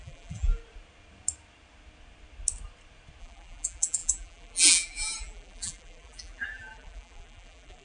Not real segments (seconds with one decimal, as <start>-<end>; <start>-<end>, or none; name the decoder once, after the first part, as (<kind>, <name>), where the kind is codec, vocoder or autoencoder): 0.0-0.6 (vocoder, BigVGAN v2); 3.2-7.8